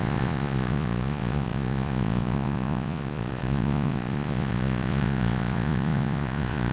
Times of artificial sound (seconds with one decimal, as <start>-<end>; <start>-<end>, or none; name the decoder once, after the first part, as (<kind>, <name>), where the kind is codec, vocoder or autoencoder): 0.0-6.7 (vocoder, Vocos)